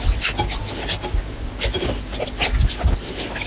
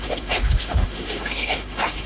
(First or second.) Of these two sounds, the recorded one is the first